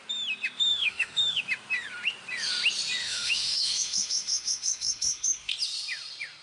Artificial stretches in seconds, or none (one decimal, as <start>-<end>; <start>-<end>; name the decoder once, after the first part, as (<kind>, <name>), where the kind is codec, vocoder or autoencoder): 0.7-1.4 (autoencoder, DAC-VAE); 3.0-5.5